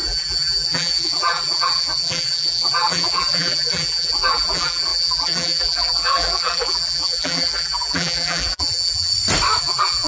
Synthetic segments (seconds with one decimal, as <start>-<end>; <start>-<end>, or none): 0.0-9.1; 9.6-10.1